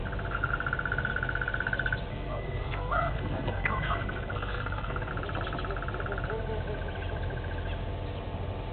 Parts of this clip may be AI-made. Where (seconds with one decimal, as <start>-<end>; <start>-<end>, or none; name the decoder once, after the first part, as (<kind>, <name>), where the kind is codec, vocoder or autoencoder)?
2.1-5.1 (codec, SNAC)